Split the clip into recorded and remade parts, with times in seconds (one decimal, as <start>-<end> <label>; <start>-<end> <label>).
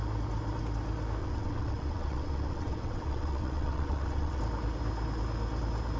0.0-1.2 recorded; 1.2-4.4 remade; 4.4-6.0 recorded